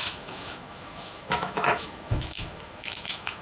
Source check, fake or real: fake